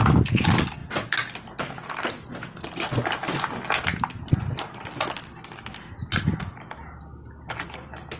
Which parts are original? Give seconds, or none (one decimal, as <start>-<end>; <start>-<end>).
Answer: 0.0-8.2